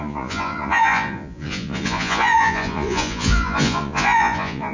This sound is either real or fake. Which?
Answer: fake